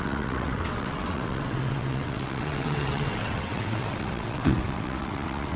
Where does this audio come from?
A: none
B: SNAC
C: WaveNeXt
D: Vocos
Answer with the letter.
C